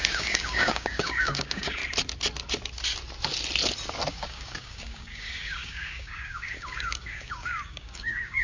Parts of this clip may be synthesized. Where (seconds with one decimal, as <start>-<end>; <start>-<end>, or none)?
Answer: 0.0-1.8; 4.1-8.4